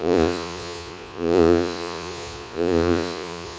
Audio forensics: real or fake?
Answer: fake